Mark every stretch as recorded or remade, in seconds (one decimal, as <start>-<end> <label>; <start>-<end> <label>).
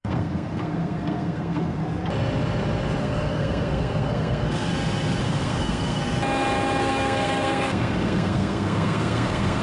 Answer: 0.0-1.8 remade; 1.8-3.0 recorded; 3.0-4.7 remade; 4.7-5.2 recorded; 5.2-6.0 remade; 6.0-6.8 recorded; 6.8-9.6 remade